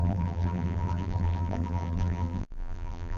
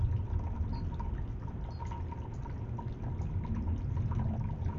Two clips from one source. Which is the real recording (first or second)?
second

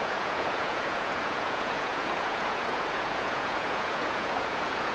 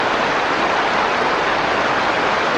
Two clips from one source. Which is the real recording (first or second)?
second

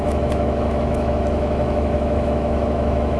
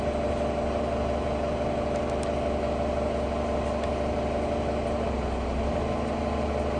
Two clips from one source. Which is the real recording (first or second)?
second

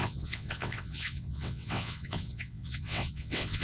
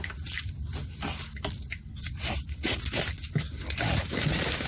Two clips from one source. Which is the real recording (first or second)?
second